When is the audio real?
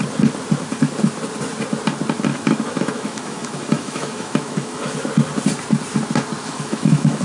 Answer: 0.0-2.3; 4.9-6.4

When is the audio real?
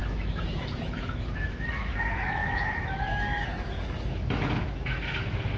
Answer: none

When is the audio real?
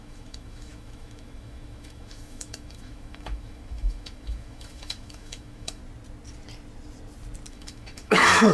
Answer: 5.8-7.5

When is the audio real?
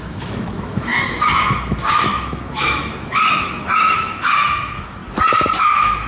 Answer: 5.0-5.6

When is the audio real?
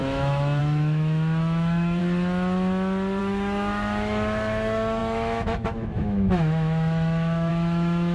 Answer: 2.0-3.2